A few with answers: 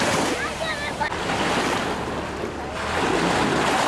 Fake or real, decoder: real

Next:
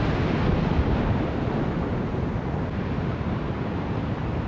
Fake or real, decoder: real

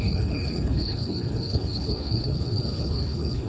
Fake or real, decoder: fake, codec, HILCodec